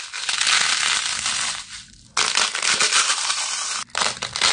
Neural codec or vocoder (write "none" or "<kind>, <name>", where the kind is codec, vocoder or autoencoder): none